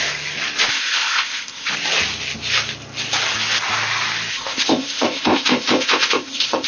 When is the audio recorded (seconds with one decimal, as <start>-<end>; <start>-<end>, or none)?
0.0-0.7; 1.7-4.3